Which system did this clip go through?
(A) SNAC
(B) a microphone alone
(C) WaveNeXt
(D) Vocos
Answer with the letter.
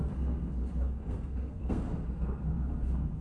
A